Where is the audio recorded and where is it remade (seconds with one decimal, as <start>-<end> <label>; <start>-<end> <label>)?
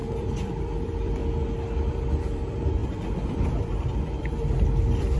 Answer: 0.0-1.2 remade; 1.2-1.9 recorded; 1.9-5.2 remade